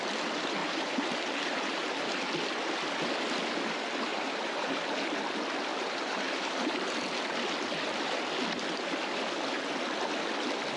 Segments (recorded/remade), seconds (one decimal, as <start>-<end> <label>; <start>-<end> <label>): 0.0-0.6 recorded; 0.6-2.3 remade; 2.3-4.1 recorded; 4.1-4.7 remade; 4.7-5.7 recorded; 5.7-7.2 remade; 7.2-10.8 recorded